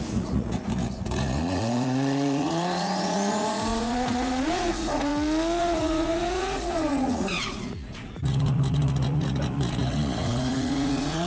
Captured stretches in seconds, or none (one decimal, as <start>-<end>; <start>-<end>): 5.1-5.6